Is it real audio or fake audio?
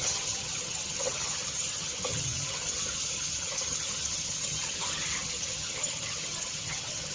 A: fake